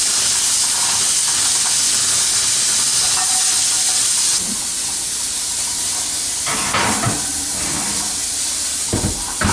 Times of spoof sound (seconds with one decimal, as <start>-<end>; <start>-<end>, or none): none